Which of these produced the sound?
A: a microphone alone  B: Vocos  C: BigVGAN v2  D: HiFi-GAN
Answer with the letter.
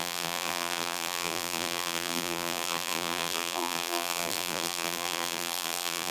C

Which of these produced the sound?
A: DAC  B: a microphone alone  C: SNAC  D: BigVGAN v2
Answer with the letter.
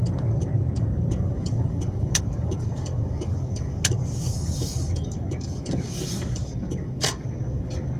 A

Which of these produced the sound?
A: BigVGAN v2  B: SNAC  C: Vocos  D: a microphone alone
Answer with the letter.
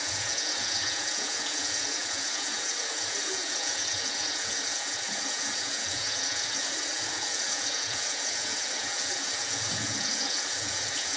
C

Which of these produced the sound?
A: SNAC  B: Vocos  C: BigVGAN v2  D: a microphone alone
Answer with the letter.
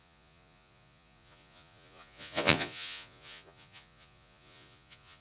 B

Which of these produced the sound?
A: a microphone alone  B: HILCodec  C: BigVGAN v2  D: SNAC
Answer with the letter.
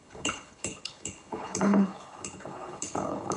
B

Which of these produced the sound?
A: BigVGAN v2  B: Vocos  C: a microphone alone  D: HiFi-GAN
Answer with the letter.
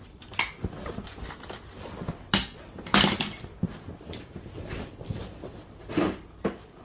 C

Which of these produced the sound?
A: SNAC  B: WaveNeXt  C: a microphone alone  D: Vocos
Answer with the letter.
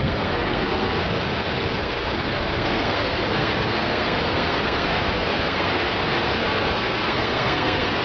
A